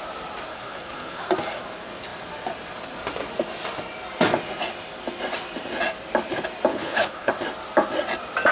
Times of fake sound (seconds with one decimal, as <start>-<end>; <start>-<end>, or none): 0.5-1.2; 6.7-7.3